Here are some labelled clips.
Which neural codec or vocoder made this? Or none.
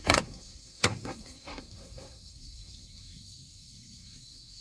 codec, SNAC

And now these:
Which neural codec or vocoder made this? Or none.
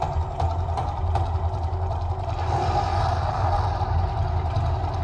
none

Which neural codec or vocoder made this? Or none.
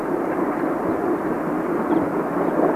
none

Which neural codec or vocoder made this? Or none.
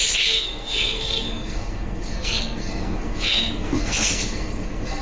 codec, SNAC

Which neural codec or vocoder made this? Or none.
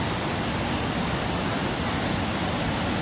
none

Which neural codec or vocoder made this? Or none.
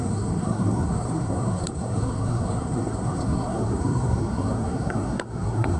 codec, SNAC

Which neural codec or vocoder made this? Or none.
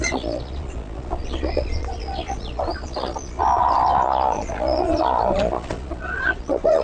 vocoder, Vocos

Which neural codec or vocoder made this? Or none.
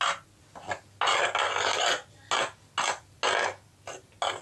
none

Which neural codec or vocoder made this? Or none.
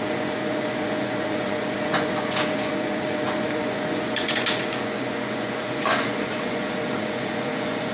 vocoder, Vocos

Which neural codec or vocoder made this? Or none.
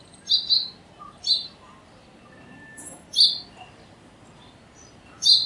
none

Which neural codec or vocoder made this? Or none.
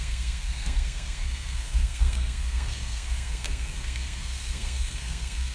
codec, SNAC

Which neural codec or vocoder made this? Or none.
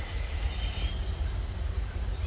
none